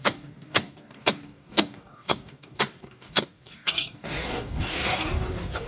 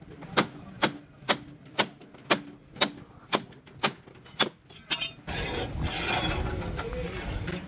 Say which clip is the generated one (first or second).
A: first